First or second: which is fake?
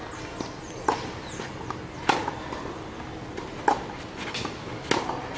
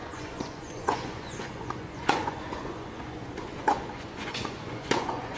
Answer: second